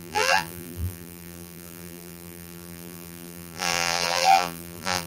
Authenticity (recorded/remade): remade